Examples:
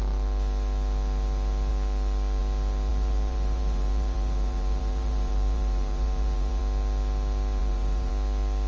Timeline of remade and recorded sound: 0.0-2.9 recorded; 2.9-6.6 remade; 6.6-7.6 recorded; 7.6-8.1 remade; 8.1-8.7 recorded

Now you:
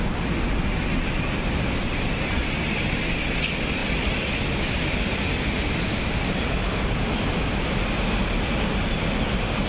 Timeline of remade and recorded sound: 0.0-3.8 recorded; 3.8-7.7 remade; 7.7-9.7 recorded

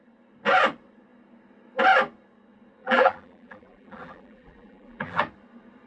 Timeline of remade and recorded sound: 0.0-2.8 recorded; 2.8-5.2 remade; 5.2-5.9 recorded

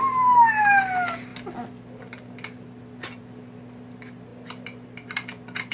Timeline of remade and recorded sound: 0.0-5.7 recorded

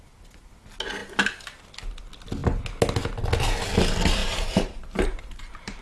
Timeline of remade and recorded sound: 0.0-4.2 recorded; 4.2-5.8 remade

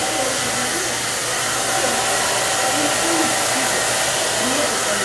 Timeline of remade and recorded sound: 0.0-5.0 recorded

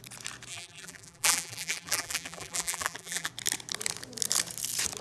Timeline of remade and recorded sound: 0.0-0.5 recorded; 0.5-3.3 remade; 3.3-5.0 recorded

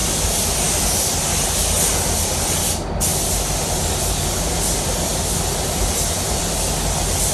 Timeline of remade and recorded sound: 0.0-3.1 recorded; 3.1-3.8 remade; 3.8-5.1 recorded; 5.1-6.4 remade; 6.4-7.3 recorded